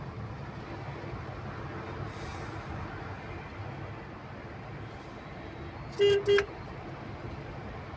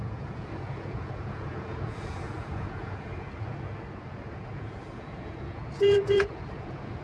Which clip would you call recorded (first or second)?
first